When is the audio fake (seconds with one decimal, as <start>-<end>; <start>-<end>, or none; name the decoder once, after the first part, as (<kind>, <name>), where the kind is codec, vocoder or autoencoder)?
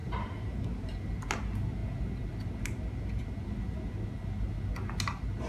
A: 0.0-0.9 (vocoder, BigVGAN v2)